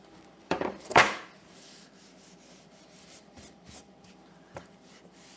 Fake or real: fake